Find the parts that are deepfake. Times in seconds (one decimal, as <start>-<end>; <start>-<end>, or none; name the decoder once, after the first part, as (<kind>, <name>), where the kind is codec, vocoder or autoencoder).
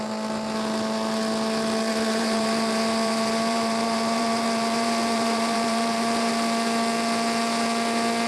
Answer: 1.9-6.3 (vocoder, BigVGAN v2)